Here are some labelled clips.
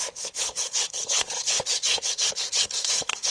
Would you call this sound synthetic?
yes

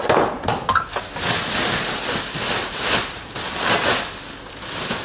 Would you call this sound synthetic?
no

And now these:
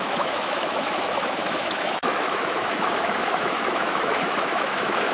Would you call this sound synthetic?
yes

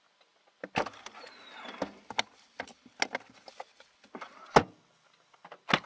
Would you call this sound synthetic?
no